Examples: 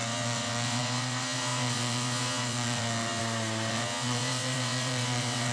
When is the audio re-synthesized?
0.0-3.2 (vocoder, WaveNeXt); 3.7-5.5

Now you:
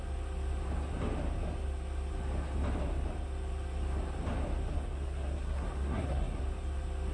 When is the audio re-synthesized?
4.7-6.4 (codec, SNAC)

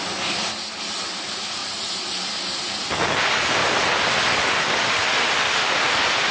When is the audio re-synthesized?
none

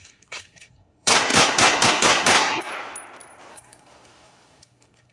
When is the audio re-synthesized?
0.0-2.7 (codec, SNAC); 3.5-5.1